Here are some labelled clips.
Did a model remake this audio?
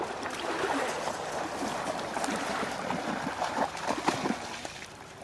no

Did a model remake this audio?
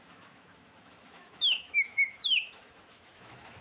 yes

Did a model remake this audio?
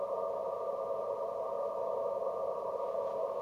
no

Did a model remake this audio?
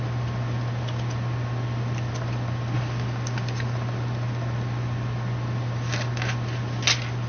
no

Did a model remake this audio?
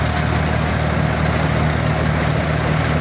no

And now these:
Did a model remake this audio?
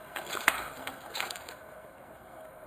yes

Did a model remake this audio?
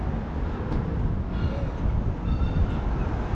no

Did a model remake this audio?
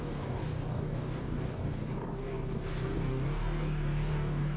yes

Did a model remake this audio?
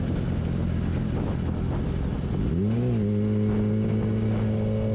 no